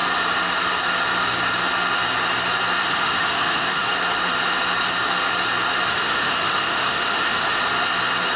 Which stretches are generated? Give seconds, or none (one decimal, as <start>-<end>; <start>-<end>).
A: 2.8-3.9; 5.9-7.6